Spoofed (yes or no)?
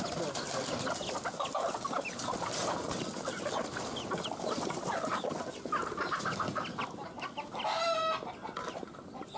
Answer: no